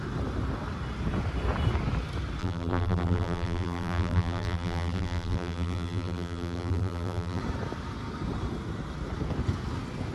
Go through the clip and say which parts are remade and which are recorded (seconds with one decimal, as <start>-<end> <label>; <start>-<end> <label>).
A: 0.0-2.4 recorded; 2.4-7.4 remade; 7.4-10.1 recorded